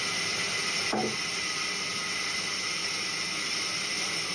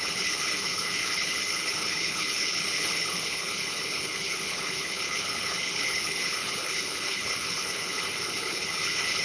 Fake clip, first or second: second